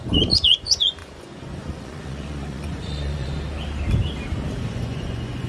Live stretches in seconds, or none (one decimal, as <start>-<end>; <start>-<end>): 3.3-4.6